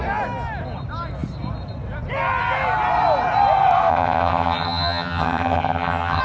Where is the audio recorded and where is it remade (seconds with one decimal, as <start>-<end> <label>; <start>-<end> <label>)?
0.0-3.9 recorded; 3.9-6.2 remade